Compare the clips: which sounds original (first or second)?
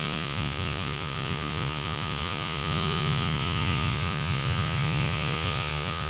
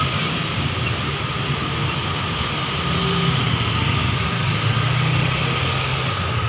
second